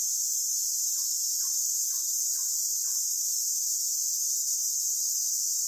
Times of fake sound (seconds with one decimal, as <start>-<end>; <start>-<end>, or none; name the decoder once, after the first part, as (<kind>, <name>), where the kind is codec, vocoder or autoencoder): none